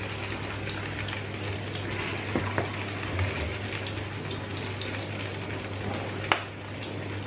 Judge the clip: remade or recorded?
recorded